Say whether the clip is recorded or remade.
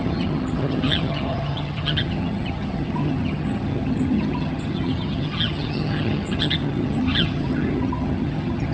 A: remade